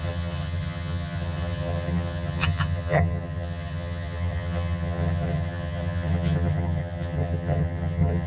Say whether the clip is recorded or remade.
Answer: remade